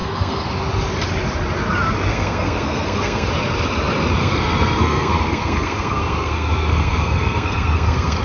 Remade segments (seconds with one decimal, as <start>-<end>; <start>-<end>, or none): 0.0-0.5; 2.1-3.3; 4.2-8.2